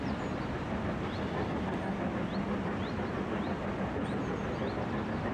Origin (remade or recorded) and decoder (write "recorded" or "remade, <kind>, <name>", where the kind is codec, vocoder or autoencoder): remade, vocoder, BigVGAN v2